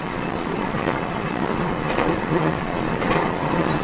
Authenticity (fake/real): fake